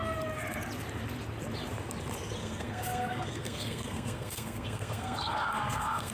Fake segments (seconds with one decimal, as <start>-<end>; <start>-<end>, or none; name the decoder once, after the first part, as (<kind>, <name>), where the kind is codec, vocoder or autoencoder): 2.4-6.1 (codec, SNAC)